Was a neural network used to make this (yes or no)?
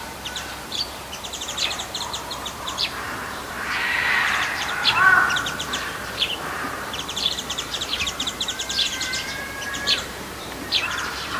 yes